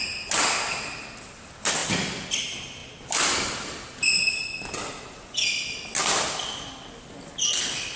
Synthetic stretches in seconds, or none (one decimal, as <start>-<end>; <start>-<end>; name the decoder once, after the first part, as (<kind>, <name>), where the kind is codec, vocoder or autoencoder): none